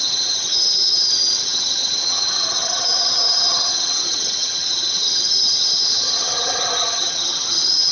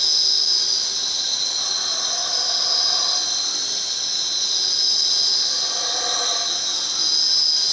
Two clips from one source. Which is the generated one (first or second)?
first